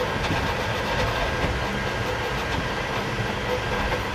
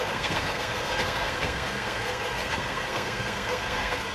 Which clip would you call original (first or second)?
first